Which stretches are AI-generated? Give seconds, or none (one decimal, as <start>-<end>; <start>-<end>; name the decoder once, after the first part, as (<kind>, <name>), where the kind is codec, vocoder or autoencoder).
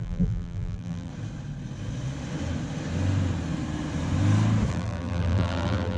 0.0-1.1 (vocoder, BigVGAN v2); 4.7-6.0